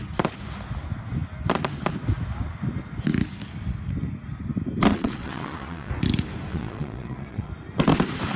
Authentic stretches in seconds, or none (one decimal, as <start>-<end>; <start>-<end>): 0.0-4.9; 5.9-6.5; 7.5-8.4